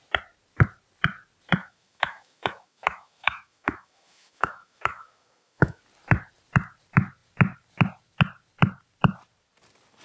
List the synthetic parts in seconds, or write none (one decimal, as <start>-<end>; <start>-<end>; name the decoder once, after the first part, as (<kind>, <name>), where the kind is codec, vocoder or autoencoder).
1.6-5.8 (autoencoder, DAC-VAE)